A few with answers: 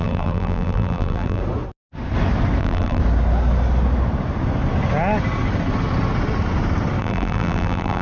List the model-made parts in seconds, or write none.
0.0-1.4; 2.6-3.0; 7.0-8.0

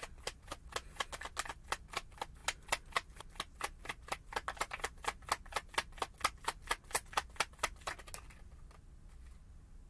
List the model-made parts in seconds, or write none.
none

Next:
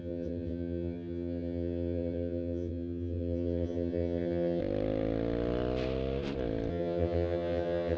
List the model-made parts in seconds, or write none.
0.0-4.6; 6.7-8.0

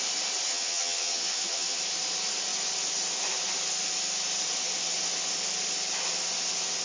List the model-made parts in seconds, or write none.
0.5-1.8

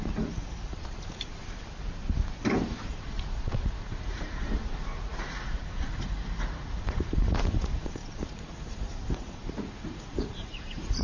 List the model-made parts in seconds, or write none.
0.0-1.3; 2.8-11.0

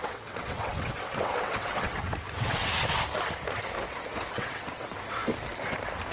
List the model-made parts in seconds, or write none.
0.0-2.7; 3.9-5.2

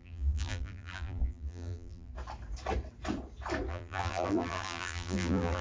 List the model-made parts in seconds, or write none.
0.0-2.1; 3.7-5.6